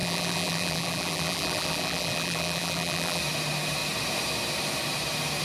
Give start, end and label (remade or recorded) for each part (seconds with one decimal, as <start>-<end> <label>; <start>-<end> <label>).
0.0-3.2 remade; 3.2-5.4 recorded